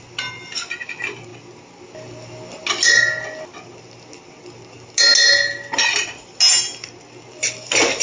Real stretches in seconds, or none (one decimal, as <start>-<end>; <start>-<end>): 0.0-8.0